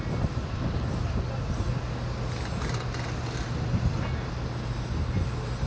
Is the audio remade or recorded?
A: recorded